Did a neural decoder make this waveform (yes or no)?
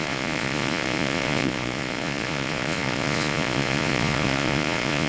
yes